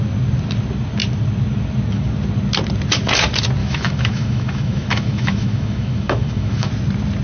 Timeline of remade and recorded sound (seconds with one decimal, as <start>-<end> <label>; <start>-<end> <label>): 0.0-3.6 recorded; 3.6-6.7 remade; 6.7-7.2 recorded